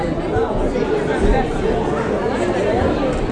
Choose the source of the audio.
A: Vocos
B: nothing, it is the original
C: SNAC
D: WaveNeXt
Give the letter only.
B